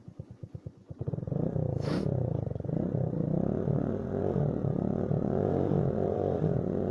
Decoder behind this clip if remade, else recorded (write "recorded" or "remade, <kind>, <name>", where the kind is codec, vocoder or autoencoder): remade, vocoder, Vocos